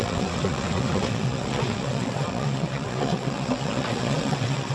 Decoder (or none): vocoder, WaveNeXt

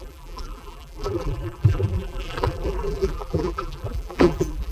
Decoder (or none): vocoder, BigVGAN v2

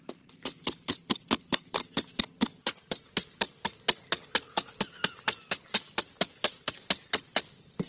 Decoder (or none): none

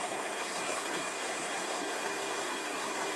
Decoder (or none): codec, SNAC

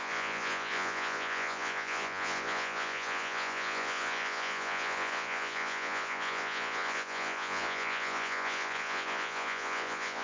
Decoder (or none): vocoder, Vocos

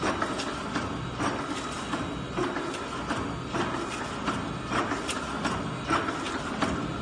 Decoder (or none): none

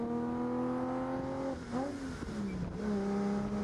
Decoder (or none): none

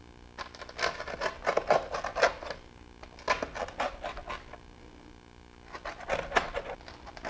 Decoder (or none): none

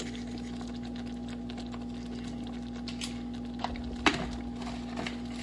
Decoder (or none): none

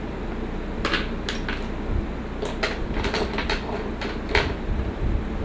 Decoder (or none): none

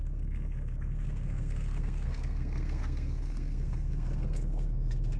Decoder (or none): codec, SNAC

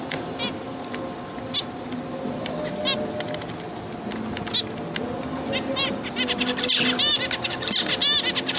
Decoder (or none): none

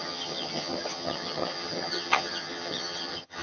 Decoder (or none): vocoder, HiFi-GAN